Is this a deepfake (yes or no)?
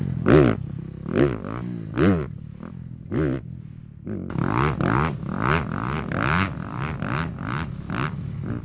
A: no